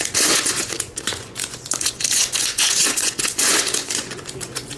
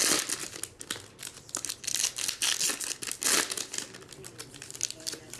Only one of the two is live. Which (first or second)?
second